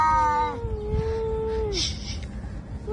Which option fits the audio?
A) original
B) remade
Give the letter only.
A